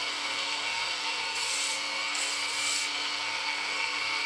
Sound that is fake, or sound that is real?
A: fake